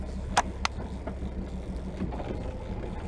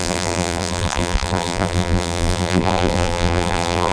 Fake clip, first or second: second